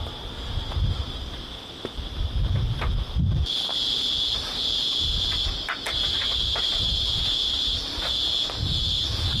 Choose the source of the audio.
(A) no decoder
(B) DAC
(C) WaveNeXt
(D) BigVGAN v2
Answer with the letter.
A